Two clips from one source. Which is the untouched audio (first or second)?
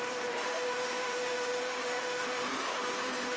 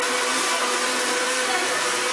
second